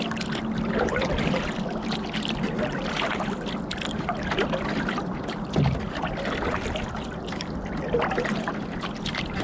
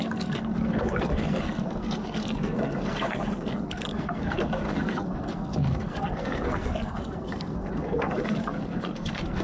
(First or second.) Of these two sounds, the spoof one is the second